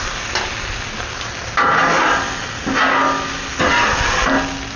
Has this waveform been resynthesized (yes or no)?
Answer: no